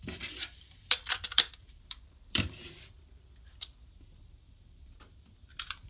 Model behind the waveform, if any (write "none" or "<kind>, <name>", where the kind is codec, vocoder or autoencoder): vocoder, BigVGAN v2